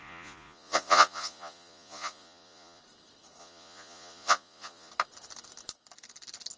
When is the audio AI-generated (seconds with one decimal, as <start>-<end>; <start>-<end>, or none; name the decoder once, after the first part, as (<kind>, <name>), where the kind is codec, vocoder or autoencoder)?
0.0-2.8 (vocoder, Vocos); 3.4-4.9